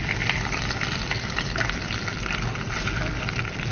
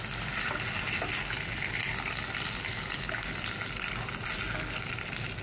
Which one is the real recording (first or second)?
second